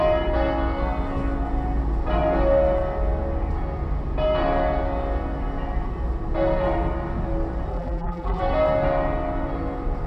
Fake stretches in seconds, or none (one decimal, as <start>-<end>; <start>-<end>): 7.7-8.4